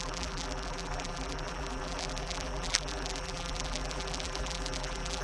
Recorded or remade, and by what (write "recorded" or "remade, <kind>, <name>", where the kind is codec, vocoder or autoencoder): remade, vocoder, BigVGAN v2